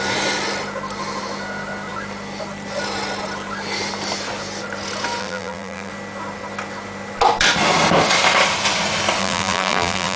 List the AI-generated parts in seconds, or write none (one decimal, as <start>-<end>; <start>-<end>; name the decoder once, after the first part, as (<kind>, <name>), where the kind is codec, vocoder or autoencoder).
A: 5.2-5.9 (vocoder, BigVGAN v2); 9.2-10.2